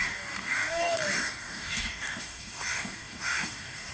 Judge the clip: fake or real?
fake